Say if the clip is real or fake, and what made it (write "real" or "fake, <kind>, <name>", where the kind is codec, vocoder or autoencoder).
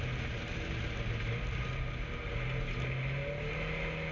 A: real